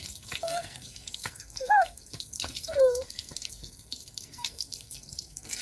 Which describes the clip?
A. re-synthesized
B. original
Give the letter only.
A